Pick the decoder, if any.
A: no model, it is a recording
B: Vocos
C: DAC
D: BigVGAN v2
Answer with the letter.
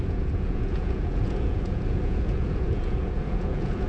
B